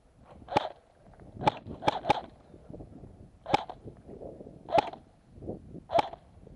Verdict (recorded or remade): recorded